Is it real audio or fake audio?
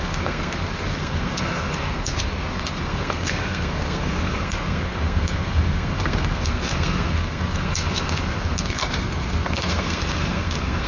fake